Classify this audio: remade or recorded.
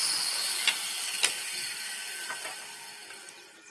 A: recorded